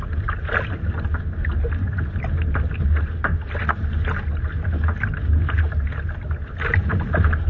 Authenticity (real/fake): real